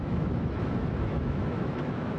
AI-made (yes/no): yes